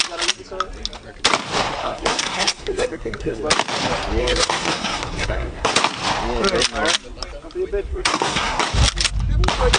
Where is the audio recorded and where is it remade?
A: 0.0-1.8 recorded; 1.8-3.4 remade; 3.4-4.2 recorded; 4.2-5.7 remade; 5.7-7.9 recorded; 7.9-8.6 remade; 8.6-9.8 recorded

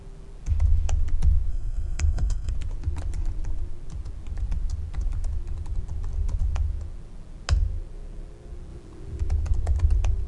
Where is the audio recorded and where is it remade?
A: 0.0-1.5 recorded; 1.5-2.5 remade; 2.5-10.3 recorded

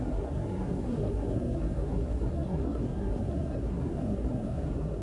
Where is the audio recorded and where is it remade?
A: 0.0-5.0 remade

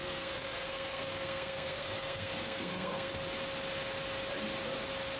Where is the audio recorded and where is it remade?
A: 0.0-3.1 remade; 3.1-5.2 recorded